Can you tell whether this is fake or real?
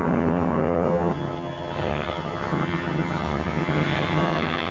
fake